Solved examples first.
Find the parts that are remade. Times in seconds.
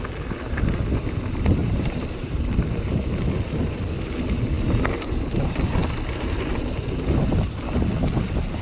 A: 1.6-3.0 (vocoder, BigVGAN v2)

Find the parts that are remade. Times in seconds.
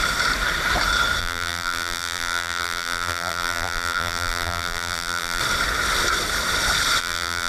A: 1.2-5.4 (vocoder, BigVGAN v2); 7.0-7.5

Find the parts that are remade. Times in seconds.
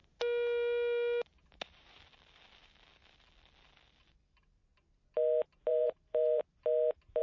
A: 4.0-4.6 (vocoder, BigVGAN v2); 5.7-6.4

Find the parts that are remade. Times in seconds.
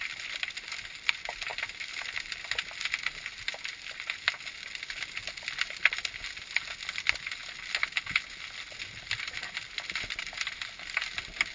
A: none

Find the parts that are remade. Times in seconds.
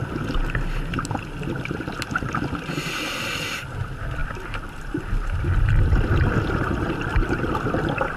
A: 4.2-4.9 (vocoder, BigVGAN v2); 6.7-7.6